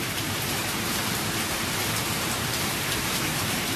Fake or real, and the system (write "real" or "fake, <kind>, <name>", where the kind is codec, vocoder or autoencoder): fake, vocoder, BigVGAN v2